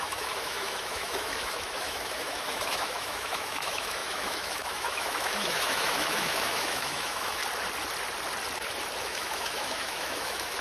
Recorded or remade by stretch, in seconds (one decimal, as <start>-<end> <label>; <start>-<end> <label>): 0.0-7.4 remade; 7.4-9.0 recorded; 9.0-10.6 remade